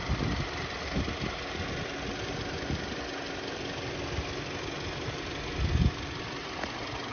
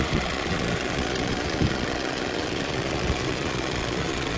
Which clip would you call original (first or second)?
first